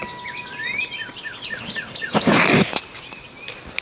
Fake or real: real